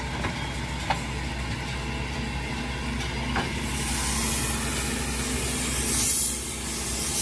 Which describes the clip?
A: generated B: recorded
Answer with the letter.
B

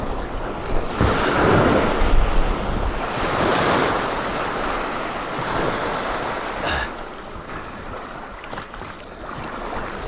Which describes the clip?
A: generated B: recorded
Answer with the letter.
B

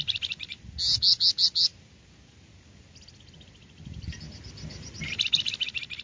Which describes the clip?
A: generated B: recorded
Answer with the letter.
B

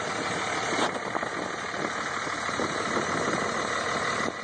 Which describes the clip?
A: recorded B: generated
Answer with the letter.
A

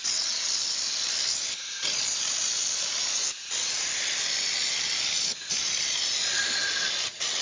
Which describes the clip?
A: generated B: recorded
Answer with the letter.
B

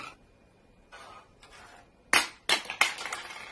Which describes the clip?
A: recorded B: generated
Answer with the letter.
A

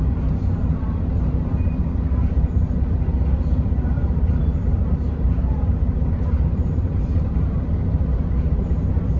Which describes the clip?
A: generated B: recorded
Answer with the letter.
A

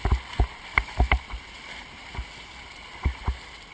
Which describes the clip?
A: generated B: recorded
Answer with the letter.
B